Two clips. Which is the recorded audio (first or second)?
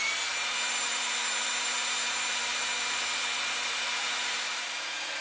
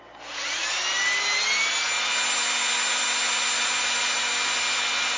second